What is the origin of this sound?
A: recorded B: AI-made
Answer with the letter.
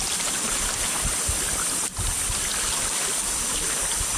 A